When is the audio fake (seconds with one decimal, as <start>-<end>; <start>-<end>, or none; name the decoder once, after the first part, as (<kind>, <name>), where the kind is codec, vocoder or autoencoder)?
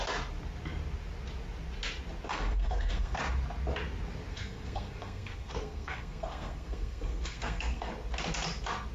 2.3-3.2 (codec, SNAC); 4.3-7.9